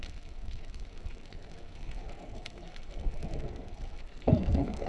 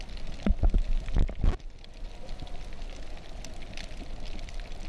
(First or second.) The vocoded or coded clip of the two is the first